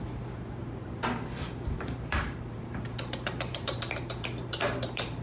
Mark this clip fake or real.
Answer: fake